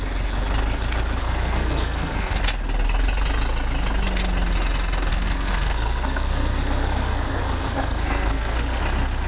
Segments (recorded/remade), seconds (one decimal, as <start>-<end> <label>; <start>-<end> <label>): 0.0-1.2 recorded; 1.2-2.4 remade; 2.4-5.1 recorded; 5.1-8.8 remade; 8.8-9.3 recorded